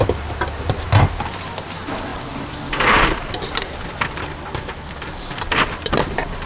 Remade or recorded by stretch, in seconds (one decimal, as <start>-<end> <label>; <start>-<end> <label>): 0.0-2.1 recorded; 2.1-6.0 remade; 6.0-6.5 recorded